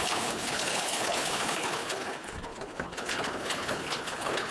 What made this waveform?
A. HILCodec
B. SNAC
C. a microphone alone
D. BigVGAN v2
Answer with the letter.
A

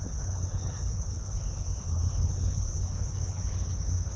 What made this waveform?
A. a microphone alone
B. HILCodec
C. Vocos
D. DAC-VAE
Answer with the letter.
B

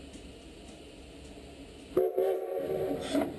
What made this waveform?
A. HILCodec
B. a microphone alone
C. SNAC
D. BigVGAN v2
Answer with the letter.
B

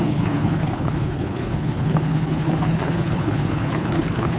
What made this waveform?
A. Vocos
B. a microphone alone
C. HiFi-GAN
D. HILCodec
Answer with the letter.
D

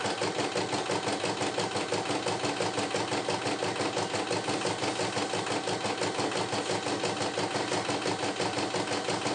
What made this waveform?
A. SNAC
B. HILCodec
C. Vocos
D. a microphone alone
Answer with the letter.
D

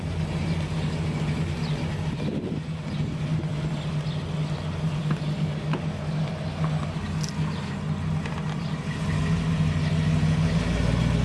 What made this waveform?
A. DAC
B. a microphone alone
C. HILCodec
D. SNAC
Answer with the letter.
B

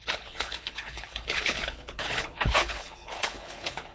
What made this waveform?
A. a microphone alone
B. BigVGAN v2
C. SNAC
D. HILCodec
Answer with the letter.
D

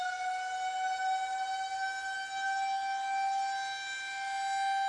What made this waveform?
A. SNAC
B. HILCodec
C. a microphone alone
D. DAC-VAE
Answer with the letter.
C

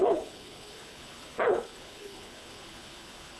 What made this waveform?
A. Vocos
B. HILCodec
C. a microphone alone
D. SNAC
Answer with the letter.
B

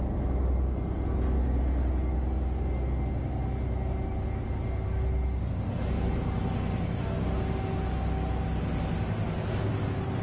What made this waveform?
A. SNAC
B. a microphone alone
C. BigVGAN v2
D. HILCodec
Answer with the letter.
B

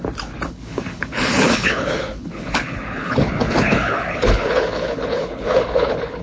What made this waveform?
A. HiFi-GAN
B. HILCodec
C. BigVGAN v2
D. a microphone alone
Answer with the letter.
B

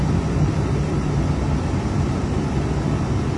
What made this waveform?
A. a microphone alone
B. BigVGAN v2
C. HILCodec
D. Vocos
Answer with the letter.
A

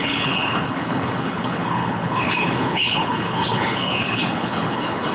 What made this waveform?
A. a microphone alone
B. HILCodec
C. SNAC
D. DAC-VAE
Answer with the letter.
B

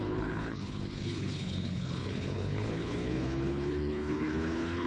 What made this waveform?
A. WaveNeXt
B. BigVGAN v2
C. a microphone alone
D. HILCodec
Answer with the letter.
D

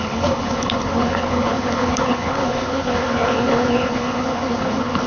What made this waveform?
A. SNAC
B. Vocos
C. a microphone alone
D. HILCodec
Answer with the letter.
D